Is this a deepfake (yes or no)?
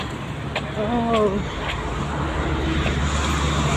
no